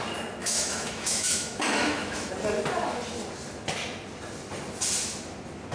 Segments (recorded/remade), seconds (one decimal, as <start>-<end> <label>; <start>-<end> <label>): 0.0-0.4 recorded; 0.4-2.3 remade; 2.3-5.7 recorded